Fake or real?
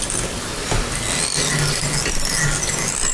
real